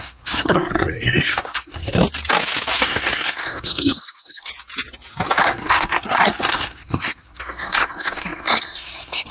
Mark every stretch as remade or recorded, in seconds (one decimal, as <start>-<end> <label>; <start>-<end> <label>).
0.0-2.0 remade; 2.0-2.8 recorded; 2.8-4.5 remade; 4.5-5.4 recorded; 5.4-9.3 remade